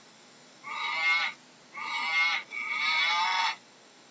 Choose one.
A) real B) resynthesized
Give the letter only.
A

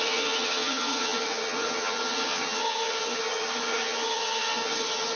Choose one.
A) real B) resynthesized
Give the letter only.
B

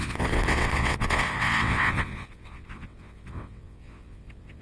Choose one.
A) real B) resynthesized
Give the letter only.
B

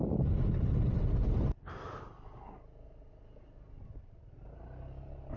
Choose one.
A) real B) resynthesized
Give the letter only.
A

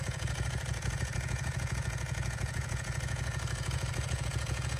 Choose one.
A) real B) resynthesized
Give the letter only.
B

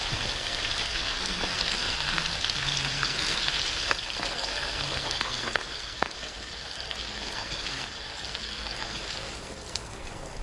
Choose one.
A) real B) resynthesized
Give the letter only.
B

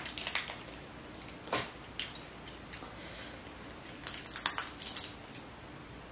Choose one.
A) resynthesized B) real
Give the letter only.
B